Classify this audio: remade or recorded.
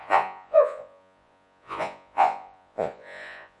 remade